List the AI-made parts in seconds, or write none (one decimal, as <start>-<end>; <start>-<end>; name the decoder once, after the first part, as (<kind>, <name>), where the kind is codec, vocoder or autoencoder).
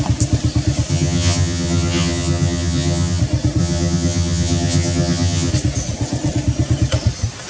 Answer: 0.9-3.2 (vocoder, HiFi-GAN); 3.6-5.5